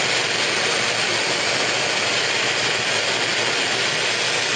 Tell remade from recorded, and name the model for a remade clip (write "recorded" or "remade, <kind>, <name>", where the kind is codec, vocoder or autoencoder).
recorded